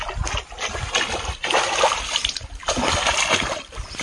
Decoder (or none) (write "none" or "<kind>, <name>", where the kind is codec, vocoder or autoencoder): none